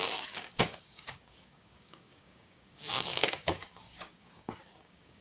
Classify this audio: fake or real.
fake